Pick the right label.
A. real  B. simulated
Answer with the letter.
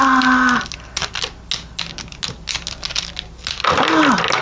A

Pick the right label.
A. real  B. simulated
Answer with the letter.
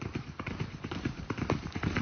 B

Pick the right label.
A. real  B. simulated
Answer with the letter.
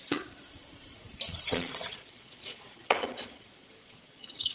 B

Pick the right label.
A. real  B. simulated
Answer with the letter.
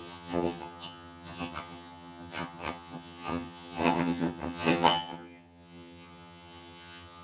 B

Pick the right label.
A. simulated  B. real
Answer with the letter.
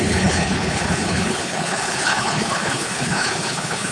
A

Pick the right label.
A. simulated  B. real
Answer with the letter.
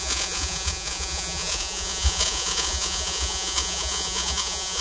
A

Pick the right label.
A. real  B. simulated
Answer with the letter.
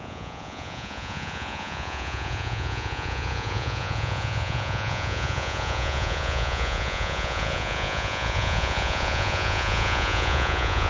B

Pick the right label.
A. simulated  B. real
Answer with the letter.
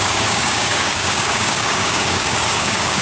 A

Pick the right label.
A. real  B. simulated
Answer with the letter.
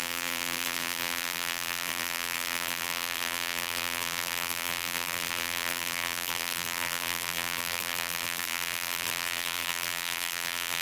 B